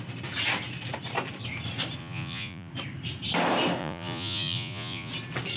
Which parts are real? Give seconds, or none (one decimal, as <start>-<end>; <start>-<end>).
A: 0.0-2.0; 2.7-3.8; 5.1-5.6

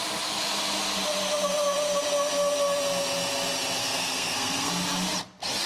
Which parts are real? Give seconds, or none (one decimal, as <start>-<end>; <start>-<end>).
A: 0.0-3.8; 4.7-5.7

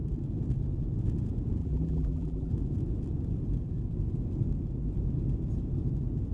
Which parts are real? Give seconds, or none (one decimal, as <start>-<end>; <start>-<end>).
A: 0.0-1.6; 2.5-6.3